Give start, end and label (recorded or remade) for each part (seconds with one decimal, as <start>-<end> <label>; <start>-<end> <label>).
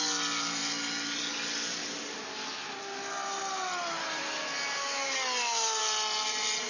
0.0-6.7 recorded